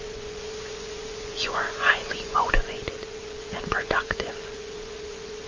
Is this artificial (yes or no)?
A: yes